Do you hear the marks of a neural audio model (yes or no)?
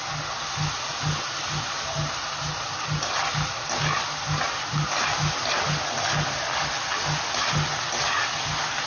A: no